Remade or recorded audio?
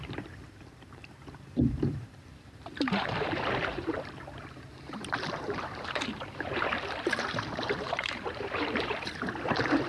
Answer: remade